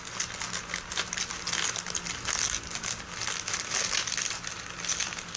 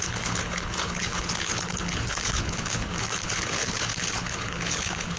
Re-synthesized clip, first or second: second